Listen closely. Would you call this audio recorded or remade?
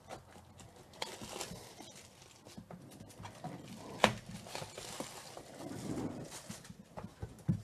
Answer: recorded